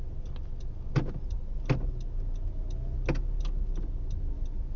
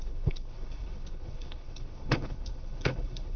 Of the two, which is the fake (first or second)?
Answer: second